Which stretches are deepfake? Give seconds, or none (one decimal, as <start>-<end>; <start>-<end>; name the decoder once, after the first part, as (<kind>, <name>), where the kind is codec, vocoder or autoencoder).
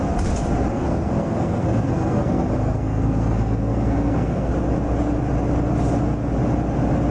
0.7-4.5 (codec, SNAC)